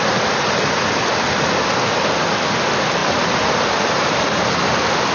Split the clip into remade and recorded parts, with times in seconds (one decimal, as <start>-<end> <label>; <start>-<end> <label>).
0.0-3.0 recorded; 3.0-4.5 remade; 4.5-5.1 recorded